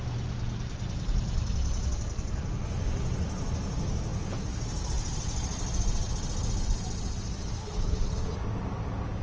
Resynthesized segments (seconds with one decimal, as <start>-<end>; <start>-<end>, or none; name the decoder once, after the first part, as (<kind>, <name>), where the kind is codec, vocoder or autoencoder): 7.6-8.3 (codec, HILCodec)